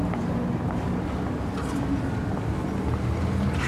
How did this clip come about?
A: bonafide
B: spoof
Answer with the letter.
A